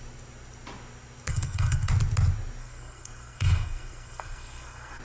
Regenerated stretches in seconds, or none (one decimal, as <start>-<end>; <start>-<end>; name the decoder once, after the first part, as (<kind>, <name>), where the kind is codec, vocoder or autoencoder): 1.3-1.9 (codec, SNAC); 2.6-5.0